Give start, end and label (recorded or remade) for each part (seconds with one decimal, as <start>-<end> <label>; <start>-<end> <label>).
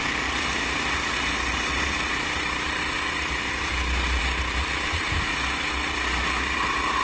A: 0.0-7.0 recorded